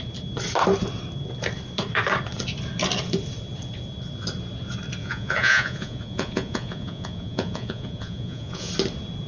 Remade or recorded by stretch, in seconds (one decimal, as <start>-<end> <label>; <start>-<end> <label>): 0.0-5.0 recorded; 5.0-8.7 remade; 8.7-9.3 recorded